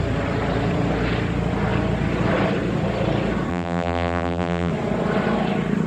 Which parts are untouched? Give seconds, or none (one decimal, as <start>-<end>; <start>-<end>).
0.0-3.5; 4.7-5.9